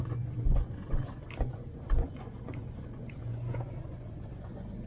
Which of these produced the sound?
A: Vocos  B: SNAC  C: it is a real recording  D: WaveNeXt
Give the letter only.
A